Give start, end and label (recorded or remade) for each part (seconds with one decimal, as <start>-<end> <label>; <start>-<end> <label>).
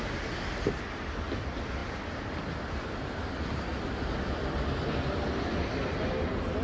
0.0-3.7 recorded; 3.7-6.1 remade; 6.1-6.6 recorded